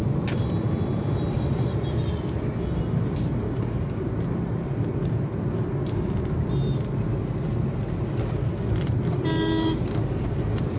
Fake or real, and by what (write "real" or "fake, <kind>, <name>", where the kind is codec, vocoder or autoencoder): real